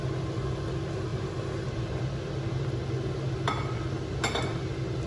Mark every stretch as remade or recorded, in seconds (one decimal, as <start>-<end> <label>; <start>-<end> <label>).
0.0-5.1 recorded